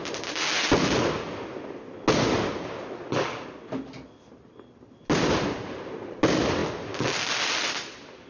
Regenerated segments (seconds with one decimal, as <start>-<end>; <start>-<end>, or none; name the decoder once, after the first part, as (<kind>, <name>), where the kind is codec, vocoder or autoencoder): none